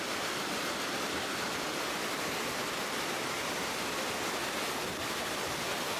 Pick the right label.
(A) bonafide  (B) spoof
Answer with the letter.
B